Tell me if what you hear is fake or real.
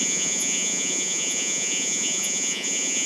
fake